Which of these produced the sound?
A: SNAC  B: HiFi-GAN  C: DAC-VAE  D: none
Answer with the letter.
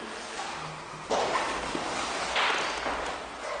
D